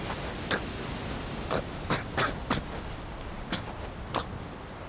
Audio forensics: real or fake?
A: real